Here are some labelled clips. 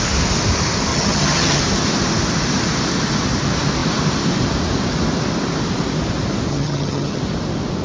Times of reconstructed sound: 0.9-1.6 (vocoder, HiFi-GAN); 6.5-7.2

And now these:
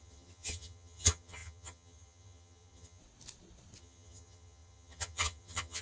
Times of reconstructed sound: 0.0-3.0 (vocoder, HiFi-GAN); 3.8-5.8